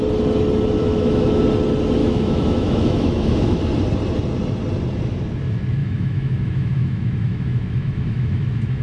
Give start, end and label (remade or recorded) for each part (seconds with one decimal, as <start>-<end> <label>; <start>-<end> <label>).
0.0-0.8 recorded; 0.8-1.4 remade; 1.4-2.0 recorded; 2.0-3.6 remade; 3.6-5.8 recorded; 5.8-8.8 remade